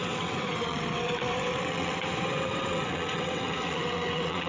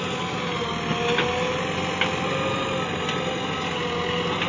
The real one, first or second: second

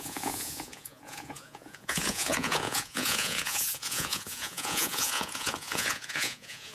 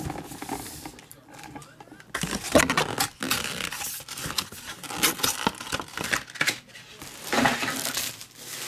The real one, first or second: second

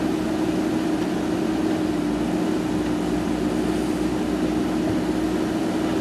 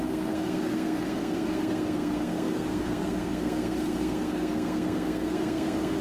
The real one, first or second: first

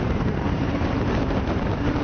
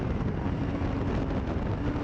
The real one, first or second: second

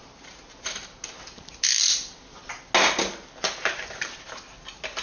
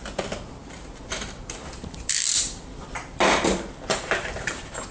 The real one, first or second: first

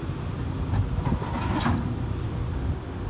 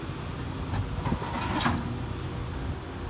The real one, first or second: second